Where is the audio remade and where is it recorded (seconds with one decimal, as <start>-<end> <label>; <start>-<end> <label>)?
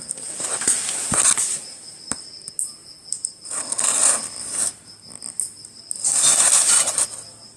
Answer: 0.0-7.6 recorded